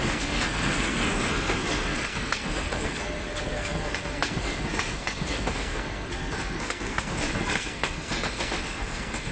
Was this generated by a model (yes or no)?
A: yes